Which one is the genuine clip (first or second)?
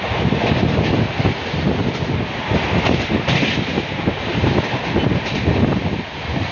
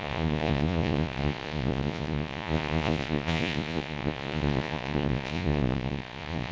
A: first